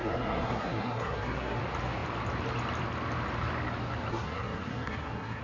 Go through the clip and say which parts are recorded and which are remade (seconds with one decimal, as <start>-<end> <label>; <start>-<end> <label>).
0.0-1.6 remade; 1.6-4.1 recorded; 4.1-5.4 remade